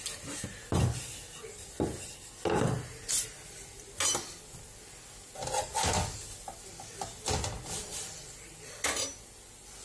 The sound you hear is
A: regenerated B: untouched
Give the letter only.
B